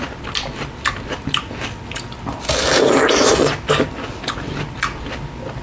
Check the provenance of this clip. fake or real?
real